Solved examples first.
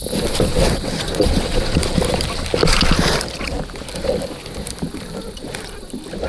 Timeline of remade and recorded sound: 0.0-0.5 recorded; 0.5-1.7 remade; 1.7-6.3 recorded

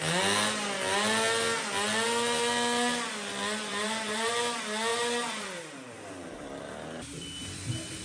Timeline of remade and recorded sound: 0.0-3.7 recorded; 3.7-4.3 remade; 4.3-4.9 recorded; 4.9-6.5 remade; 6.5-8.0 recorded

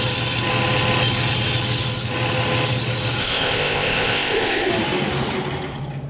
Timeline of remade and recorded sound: 0.0-3.2 recorded; 3.2-4.7 remade; 4.7-6.1 recorded

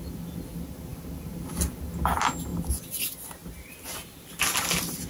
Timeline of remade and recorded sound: 0.0-0.9 recorded; 0.9-1.8 remade; 1.8-5.1 recorded

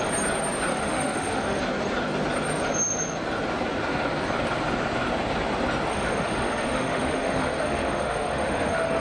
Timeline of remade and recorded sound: 0.0-0.7 recorded; 0.7-1.6 remade; 1.6-5.9 recorded; 5.9-9.0 remade